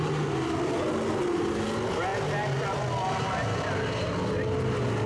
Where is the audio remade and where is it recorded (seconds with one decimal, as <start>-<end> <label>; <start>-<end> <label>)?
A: 0.0-5.1 recorded